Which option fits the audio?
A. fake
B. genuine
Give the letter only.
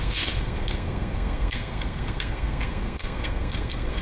A